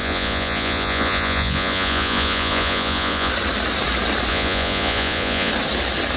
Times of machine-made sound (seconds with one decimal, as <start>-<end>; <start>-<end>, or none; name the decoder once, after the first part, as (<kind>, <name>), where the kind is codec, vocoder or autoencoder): 0.0-3.3 (vocoder, Vocos); 4.3-5.5